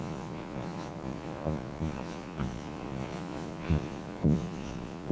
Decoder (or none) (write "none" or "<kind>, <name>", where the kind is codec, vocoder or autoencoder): vocoder, Vocos